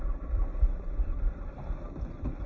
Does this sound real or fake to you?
real